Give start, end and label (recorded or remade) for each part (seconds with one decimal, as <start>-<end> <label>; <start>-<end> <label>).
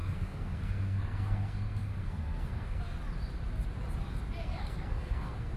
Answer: 0.0-2.8 remade; 2.8-4.4 recorded; 4.4-5.6 remade